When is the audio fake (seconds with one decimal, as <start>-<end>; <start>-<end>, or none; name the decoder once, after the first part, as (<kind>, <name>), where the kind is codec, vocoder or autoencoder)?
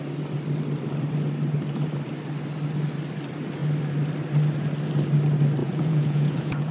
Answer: 5.6-6.7 (vocoder, Vocos)